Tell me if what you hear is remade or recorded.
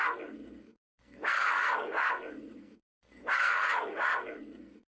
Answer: remade